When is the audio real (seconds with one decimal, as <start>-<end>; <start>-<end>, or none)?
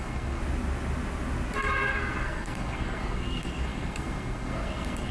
0.4-1.9